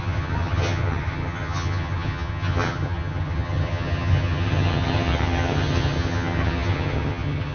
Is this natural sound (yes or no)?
no